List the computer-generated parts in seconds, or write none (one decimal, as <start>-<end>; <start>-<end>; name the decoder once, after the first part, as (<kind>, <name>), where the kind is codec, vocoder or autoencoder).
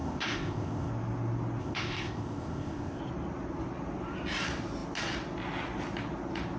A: 0.0-0.9 (codec, ZipCodec); 1.6-3.0